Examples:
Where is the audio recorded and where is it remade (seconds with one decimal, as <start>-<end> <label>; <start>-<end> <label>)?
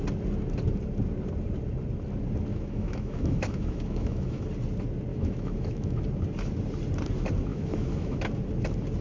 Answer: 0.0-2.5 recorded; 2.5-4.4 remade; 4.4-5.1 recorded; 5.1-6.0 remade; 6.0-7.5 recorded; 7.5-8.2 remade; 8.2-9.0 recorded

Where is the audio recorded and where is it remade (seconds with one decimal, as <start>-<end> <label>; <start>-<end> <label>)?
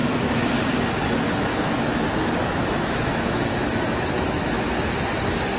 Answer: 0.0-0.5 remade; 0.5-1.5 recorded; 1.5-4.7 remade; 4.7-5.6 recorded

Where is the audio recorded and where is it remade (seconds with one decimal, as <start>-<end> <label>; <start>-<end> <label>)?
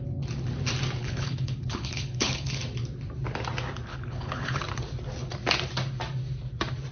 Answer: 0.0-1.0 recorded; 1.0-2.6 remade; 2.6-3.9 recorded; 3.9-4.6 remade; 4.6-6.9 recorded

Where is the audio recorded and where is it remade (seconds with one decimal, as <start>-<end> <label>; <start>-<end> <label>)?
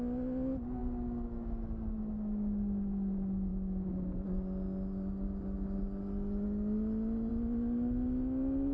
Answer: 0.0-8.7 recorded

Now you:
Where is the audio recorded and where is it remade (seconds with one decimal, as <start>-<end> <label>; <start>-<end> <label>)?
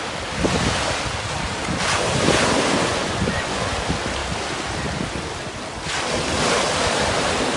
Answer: 0.0-2.9 recorded; 2.9-3.7 remade; 3.7-7.6 recorded